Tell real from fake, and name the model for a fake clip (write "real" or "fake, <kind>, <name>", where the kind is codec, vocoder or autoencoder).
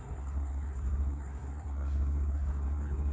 fake, codec, SNAC